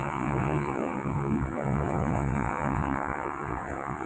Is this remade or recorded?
remade